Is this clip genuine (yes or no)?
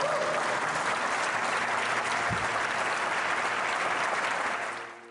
yes